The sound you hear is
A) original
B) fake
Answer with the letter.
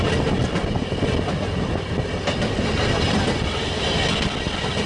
A